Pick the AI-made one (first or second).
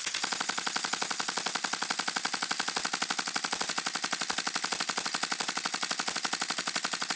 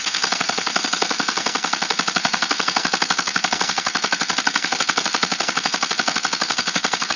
second